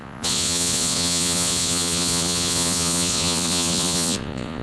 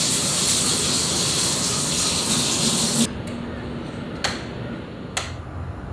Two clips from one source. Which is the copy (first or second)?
first